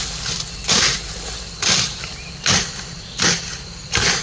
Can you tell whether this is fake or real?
real